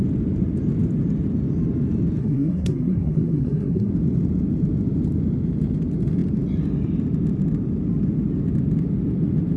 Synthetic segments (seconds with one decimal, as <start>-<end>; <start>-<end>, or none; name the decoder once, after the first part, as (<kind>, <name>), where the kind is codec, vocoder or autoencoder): 2.2-3.9 (codec, SNAC)